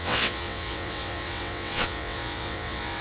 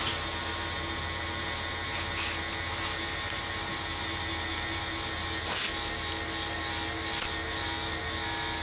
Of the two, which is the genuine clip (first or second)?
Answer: second